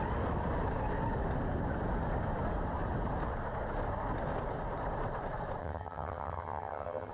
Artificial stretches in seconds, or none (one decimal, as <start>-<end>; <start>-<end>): 5.6-7.1